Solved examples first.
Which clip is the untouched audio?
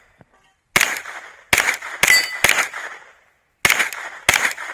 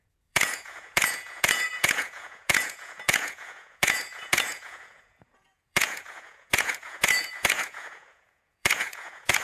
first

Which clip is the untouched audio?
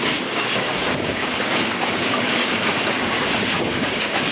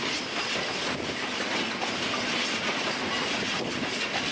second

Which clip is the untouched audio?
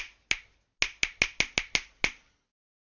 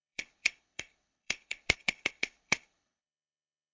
first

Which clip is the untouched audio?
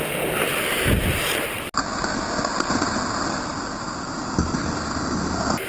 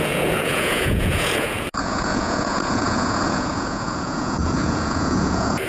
first